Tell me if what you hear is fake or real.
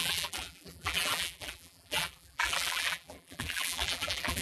fake